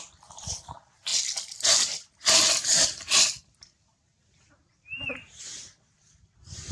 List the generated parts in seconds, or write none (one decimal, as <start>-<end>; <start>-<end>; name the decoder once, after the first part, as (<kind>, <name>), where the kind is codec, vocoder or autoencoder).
none